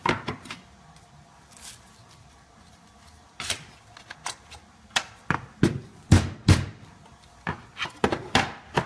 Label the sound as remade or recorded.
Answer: remade